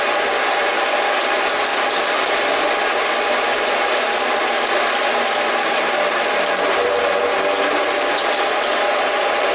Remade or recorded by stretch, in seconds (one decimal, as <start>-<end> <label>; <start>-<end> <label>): 0.0-9.5 recorded